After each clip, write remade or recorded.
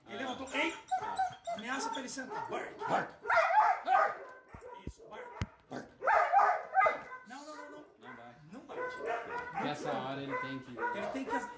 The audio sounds recorded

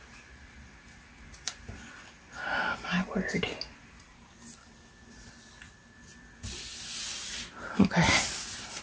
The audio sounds recorded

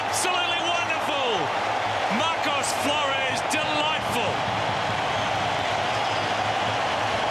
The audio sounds recorded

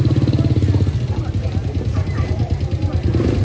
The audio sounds recorded